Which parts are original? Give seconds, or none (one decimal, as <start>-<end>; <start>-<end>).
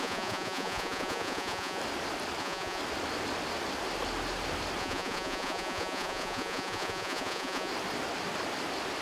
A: 1.8-2.4; 2.8-4.8; 7.7-9.0